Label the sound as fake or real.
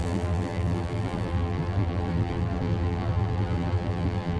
fake